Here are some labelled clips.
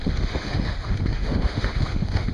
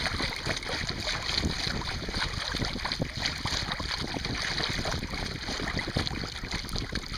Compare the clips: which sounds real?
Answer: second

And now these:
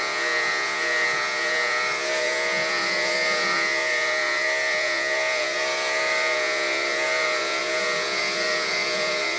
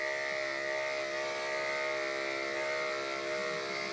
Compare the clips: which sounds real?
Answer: second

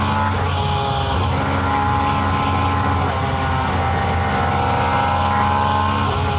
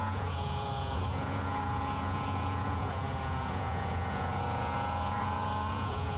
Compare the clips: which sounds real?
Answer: first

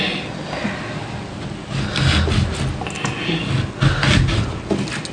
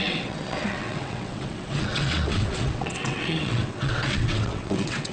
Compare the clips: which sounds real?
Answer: first